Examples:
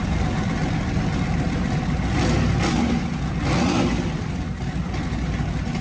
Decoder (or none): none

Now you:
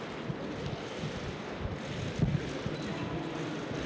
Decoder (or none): none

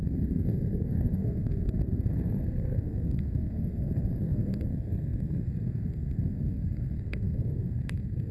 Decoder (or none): codec, SNAC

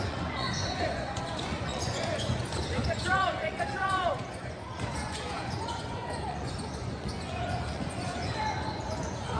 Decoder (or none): vocoder, Vocos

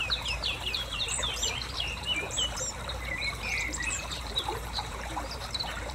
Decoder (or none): vocoder, BigVGAN v2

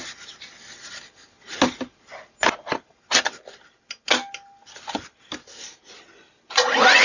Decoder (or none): none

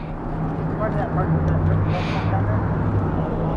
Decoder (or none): none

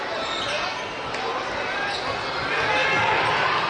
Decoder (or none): none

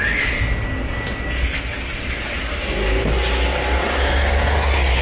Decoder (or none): none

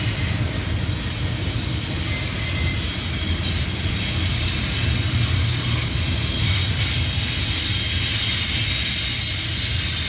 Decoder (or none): none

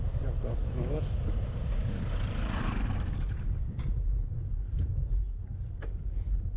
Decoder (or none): vocoder, BigVGAN v2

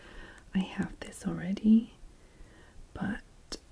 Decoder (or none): vocoder, BigVGAN v2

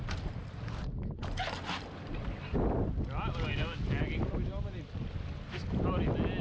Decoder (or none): none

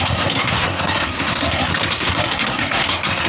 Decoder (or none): codec, SNAC